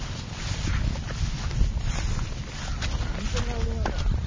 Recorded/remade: recorded